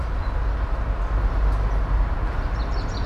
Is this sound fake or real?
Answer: real